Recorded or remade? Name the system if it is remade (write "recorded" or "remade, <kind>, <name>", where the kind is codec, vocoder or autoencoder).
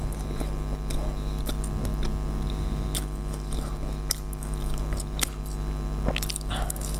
recorded